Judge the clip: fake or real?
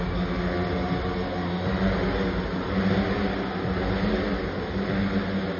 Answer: real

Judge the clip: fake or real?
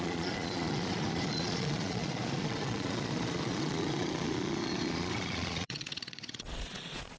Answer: fake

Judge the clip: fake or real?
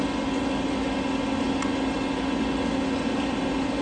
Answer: real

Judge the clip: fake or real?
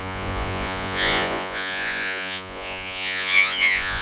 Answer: fake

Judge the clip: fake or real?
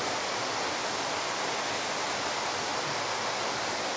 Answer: real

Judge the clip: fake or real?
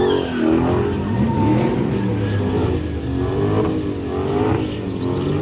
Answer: real